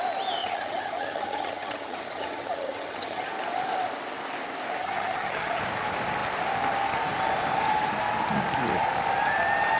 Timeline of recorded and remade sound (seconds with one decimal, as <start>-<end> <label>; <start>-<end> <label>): 0.0-0.4 recorded; 0.4-3.3 remade; 3.3-4.8 recorded; 4.8-5.6 remade; 5.6-9.8 recorded